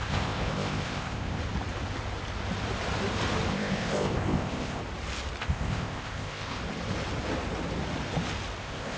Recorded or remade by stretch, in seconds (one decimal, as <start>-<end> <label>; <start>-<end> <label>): 0.0-1.4 remade; 1.4-3.5 recorded; 3.5-4.8 remade; 4.8-5.4 recorded; 5.4-6.6 remade; 6.6-8.6 recorded; 8.6-9.0 remade